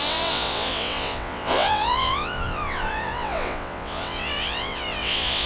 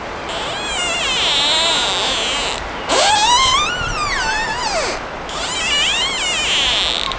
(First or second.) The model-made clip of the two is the first